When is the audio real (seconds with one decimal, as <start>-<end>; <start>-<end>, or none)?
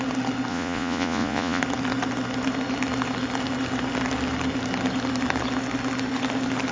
0.0-0.5; 1.6-6.7